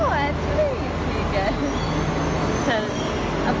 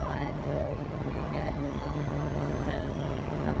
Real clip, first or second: first